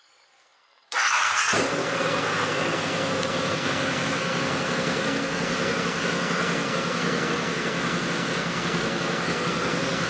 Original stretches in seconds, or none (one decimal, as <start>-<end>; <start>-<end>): none